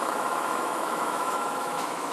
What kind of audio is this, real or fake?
fake